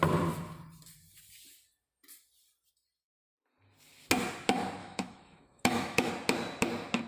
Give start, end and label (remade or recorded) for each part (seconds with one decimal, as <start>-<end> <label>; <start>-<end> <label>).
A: 0.0-4.8 recorded; 4.8-6.1 remade; 6.1-7.1 recorded